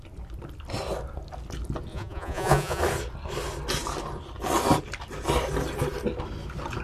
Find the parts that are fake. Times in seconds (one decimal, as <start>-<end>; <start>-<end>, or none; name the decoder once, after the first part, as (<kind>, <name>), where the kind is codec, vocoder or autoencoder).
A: 1.9-2.8 (vocoder, Vocos)